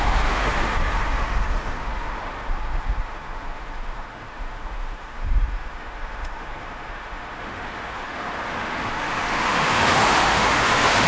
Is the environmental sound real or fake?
fake